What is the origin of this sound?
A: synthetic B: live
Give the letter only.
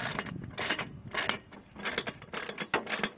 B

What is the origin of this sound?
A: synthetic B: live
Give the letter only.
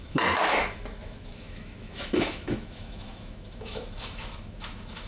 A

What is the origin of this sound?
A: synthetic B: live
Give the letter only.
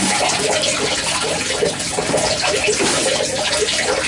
B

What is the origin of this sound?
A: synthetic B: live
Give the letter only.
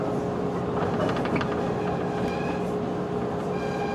B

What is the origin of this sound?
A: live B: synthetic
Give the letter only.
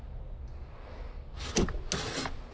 A